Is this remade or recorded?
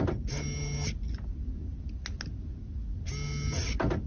recorded